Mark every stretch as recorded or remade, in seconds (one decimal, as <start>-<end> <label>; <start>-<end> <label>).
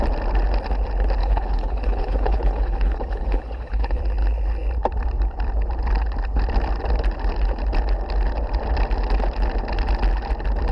0.0-1.2 recorded; 1.2-4.0 remade; 4.0-10.7 recorded